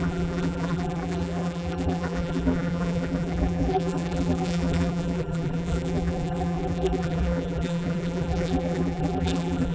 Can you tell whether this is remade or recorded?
remade